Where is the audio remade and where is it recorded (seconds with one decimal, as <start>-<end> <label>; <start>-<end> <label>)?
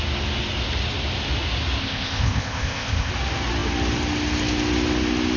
0.0-1.8 recorded; 1.8-3.1 remade; 3.1-5.4 recorded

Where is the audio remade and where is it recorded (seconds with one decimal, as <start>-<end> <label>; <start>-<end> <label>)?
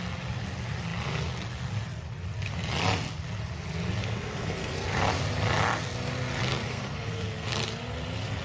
0.0-4.0 recorded; 4.0-5.0 remade; 5.0-6.7 recorded; 6.7-7.5 remade; 7.5-8.4 recorded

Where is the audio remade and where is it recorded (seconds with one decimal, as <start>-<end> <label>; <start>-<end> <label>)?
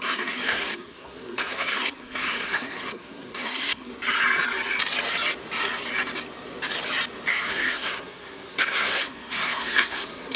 0.0-3.9 remade; 3.9-7.3 recorded; 7.3-10.4 remade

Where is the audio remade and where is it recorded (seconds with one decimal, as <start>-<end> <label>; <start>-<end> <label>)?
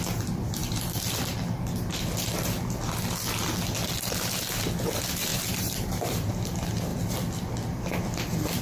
0.0-5.3 recorded; 5.3-6.3 remade; 6.3-8.6 recorded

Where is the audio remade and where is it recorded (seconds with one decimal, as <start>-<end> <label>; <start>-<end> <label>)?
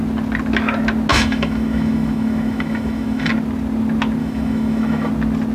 0.0-1.1 recorded; 1.1-3.3 remade; 3.3-4.2 recorded; 4.2-5.1 remade; 5.1-5.5 recorded